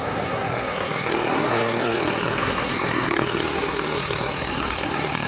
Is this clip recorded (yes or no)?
no